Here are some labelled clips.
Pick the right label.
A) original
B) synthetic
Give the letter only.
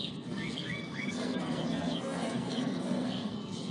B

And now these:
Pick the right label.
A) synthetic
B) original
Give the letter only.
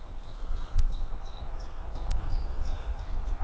A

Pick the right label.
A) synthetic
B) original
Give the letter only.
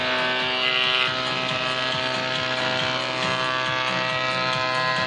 B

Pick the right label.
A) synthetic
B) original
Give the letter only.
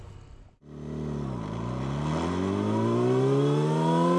B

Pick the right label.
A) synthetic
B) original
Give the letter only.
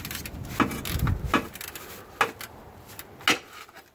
B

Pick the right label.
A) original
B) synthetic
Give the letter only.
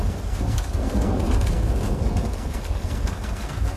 B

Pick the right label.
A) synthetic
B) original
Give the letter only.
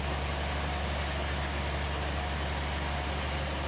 B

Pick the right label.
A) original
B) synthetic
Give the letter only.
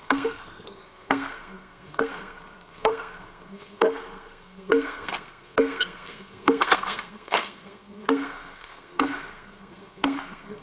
B